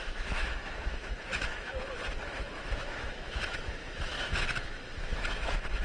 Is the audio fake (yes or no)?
yes